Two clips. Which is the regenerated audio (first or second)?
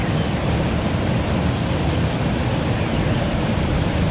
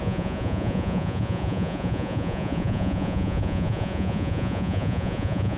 second